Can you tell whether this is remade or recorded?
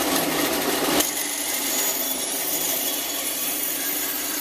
remade